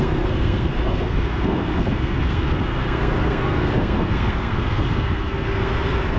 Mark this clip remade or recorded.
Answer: remade